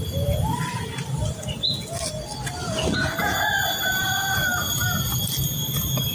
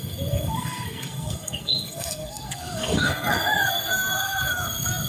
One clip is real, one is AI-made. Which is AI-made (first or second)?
second